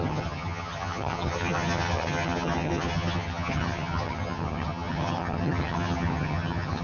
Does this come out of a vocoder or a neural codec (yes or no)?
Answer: yes